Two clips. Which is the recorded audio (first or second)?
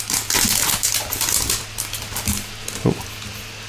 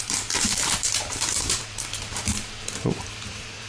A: first